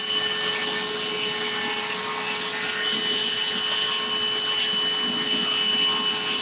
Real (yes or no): yes